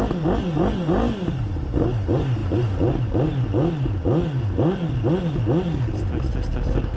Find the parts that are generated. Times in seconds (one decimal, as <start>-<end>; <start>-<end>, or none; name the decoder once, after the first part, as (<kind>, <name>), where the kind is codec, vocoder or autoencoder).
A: none